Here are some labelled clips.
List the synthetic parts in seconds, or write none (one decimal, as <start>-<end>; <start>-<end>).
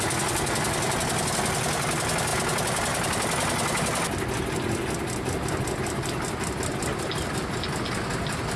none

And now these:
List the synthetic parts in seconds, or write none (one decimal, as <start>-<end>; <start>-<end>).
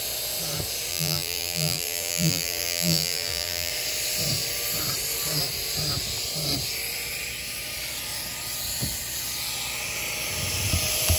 0.9-3.7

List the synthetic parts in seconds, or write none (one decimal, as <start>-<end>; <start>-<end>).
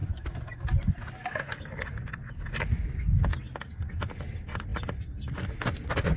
none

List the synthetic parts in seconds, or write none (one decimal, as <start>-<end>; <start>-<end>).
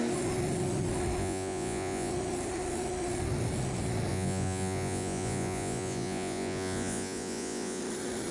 1.2-2.1; 4.1-7.8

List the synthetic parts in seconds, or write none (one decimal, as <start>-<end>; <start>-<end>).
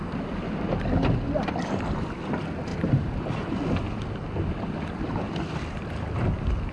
none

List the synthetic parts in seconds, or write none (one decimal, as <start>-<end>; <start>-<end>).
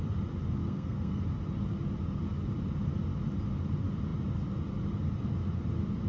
0.6-1.2